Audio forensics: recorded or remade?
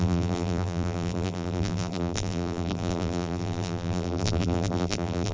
remade